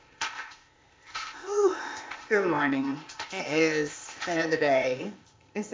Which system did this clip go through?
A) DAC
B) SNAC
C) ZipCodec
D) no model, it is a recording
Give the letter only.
C